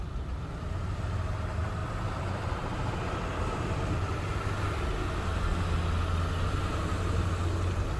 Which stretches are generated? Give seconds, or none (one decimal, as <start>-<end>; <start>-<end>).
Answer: none